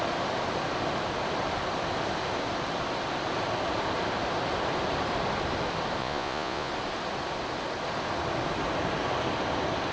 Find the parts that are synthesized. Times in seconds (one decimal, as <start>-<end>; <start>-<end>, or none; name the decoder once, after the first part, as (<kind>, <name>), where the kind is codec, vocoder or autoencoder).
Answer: 6.0-6.7 (vocoder, Vocos)